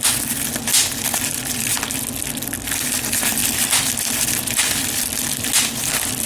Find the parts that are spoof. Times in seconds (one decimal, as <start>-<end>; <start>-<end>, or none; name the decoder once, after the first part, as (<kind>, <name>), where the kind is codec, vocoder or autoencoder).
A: none